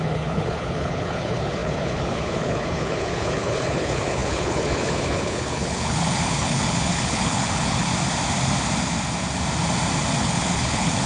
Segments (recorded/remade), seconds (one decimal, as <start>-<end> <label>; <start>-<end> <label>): 0.0-7.9 remade; 7.9-10.2 recorded; 10.2-11.1 remade